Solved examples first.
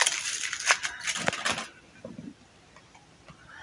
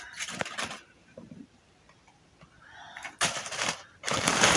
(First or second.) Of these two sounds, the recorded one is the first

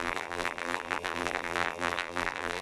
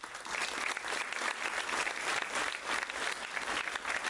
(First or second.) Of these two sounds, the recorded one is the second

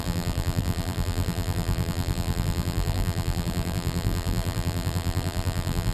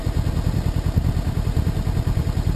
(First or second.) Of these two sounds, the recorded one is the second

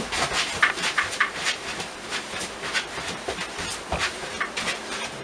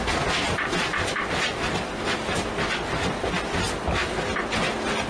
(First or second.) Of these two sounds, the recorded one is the second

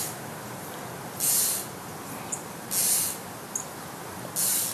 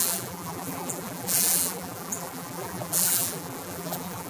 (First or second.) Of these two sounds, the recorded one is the first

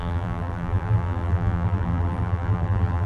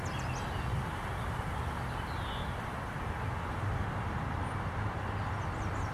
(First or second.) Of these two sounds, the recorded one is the second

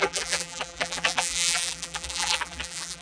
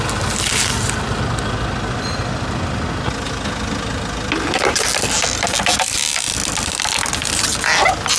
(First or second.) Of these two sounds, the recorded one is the second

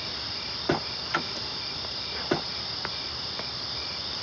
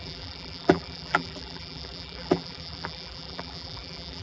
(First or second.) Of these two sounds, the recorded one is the first